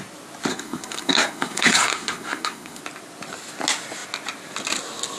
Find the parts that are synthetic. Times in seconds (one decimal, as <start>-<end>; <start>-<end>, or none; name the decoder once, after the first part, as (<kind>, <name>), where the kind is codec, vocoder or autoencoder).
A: 0.5-2.8 (codec, SNAC)

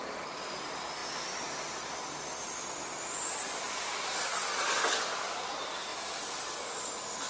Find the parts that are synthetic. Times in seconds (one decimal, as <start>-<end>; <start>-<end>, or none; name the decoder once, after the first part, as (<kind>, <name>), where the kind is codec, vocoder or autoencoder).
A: none

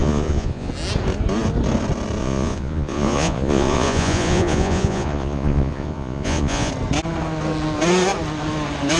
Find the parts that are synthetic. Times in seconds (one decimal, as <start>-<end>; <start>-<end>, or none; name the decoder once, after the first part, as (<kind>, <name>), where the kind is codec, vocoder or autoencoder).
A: 0.0-0.7 (vocoder, Vocos); 2.2-6.7

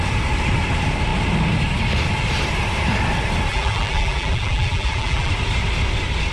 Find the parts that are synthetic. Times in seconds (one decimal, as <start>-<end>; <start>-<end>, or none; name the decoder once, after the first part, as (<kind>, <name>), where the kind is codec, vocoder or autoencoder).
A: 3.5-5.3 (vocoder, BigVGAN v2)

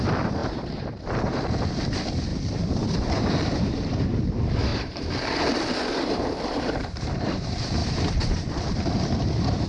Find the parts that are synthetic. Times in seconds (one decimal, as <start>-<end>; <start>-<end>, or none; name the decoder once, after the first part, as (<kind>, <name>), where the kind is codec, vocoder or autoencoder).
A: 0.0-9.7 (vocoder, BigVGAN v2)

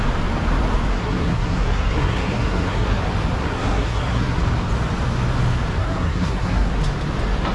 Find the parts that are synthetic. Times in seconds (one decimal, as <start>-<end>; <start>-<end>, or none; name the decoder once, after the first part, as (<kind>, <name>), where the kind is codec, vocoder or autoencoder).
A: 0.9-3.0 (codec, SNAC); 3.4-4.4; 5.8-6.7

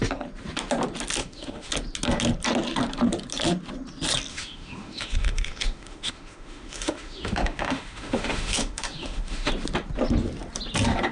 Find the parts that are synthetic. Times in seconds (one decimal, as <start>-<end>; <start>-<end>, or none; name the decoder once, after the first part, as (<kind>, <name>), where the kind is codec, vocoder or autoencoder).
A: 1.2-1.7 (autoencoder, DAC-VAE); 4.3-9.5

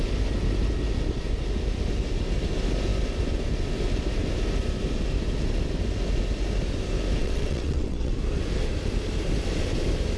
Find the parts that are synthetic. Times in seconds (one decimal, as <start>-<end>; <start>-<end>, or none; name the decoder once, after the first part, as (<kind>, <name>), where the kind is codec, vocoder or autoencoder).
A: 7.2-8.1 (vocoder, WaveNeXt)